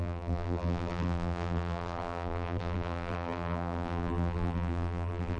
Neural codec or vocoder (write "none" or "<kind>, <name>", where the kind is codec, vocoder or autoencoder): vocoder, BigVGAN v2